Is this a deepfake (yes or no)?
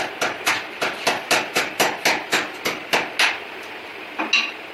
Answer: no